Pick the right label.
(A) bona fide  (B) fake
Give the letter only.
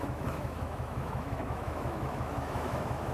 B